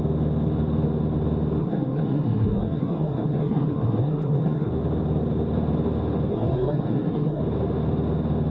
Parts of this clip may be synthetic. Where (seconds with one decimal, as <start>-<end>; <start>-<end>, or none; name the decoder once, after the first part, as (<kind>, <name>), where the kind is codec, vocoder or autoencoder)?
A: 1.6-4.7 (codec, SNAC); 6.3-7.4